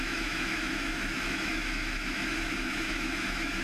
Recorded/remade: remade